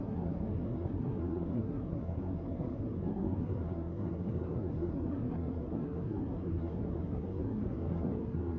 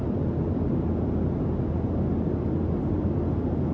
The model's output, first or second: first